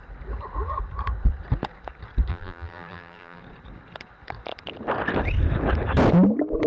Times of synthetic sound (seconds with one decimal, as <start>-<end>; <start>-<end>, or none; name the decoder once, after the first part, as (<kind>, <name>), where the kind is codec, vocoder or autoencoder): 2.3-3.4 (vocoder, BigVGAN v2)